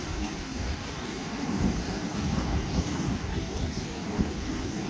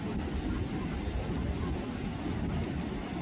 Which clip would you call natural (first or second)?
second